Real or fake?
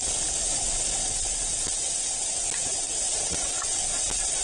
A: real